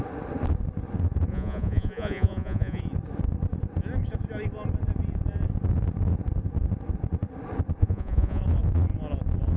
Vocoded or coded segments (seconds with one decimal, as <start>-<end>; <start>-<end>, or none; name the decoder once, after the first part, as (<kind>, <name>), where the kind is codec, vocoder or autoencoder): 1.3-2.8 (vocoder, Vocos); 7.8-8.4